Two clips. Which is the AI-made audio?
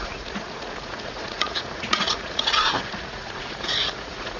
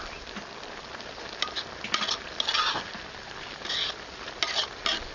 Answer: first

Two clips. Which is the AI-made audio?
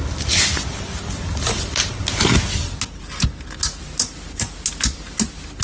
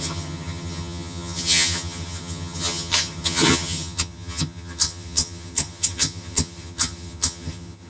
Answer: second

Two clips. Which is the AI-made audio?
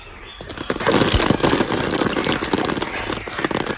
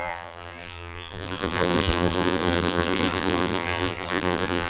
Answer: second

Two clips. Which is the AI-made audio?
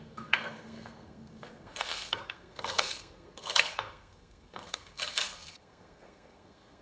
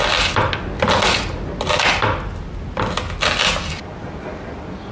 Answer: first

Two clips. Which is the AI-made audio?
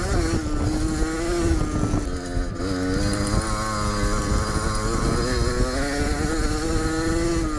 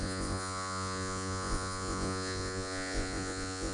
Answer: second